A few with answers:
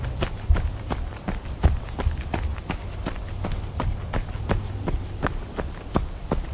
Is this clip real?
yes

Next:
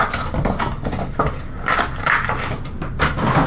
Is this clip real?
yes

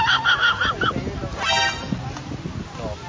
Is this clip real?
yes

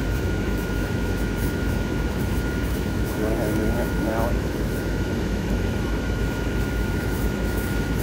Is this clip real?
no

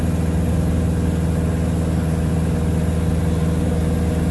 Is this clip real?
yes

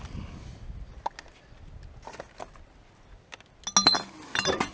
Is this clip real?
yes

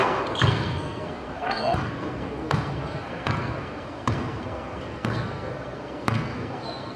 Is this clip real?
no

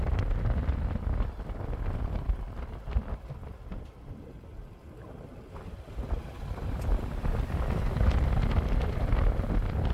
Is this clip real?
yes